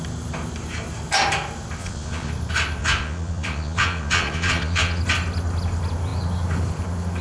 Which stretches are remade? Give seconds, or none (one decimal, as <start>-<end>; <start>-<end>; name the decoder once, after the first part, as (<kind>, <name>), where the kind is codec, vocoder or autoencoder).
1.8-2.3 (vocoder, Vocos); 2.8-5.0